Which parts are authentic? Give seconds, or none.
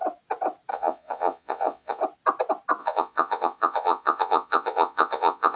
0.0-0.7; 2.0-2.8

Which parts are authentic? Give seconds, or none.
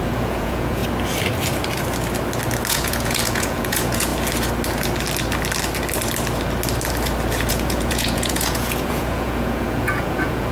0.8-2.7; 4.1-7.5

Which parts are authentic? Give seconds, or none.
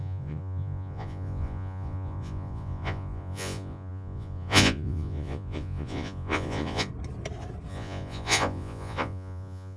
6.9-7.7